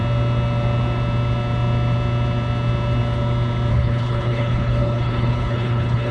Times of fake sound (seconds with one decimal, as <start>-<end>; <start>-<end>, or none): 3.7-6.1